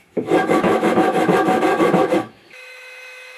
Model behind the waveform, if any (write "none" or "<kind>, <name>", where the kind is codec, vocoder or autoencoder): autoencoder, DAC-VAE